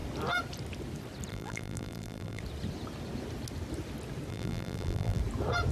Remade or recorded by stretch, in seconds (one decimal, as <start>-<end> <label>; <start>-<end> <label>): 0.0-1.3 recorded; 1.3-2.4 remade; 2.4-4.3 recorded; 4.3-5.2 remade; 5.2-5.7 recorded